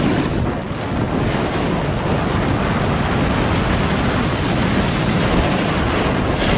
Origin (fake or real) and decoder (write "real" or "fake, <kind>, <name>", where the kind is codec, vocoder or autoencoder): real